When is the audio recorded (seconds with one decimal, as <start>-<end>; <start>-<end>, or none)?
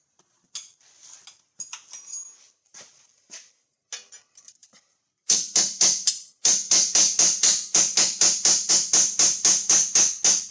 0.0-4.6; 8.7-10.5